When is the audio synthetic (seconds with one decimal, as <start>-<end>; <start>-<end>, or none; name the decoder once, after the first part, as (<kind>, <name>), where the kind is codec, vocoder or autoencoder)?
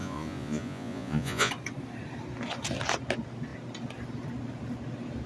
0.0-1.5 (vocoder, Vocos)